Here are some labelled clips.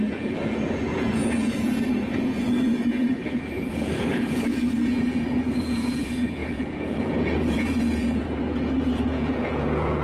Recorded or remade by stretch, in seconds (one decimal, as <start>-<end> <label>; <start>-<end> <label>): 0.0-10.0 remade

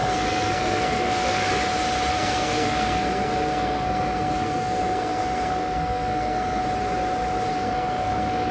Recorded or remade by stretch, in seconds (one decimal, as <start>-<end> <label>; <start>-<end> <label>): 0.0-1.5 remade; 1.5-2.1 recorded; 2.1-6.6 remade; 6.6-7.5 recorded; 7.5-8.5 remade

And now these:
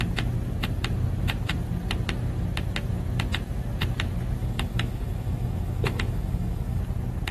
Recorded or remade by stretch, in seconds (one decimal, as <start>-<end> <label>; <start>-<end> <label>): 0.0-4.4 recorded; 4.4-6.8 remade; 6.8-7.3 recorded

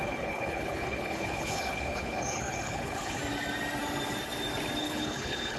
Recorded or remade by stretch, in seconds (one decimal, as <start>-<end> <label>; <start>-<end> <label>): 0.0-3.2 remade; 3.2-4.8 recorded; 4.8-5.6 remade

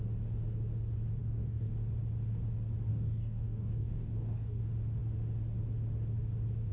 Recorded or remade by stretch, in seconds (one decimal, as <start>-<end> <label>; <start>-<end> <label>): 0.0-1.2 recorded; 1.2-1.7 remade; 1.7-2.9 recorded; 2.9-4.6 remade; 4.6-6.7 recorded

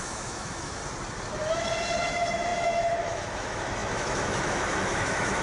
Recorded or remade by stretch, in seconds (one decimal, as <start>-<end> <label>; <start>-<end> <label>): 0.0-0.8 remade; 0.8-2.1 recorded; 2.1-5.4 remade

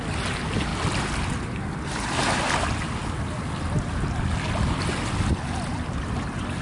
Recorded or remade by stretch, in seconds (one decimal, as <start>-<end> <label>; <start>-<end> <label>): 0.0-6.6 recorded